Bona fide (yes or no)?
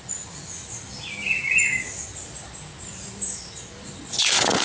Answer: yes